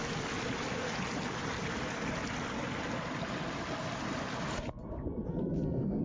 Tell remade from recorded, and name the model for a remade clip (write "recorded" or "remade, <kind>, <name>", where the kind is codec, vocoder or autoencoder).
recorded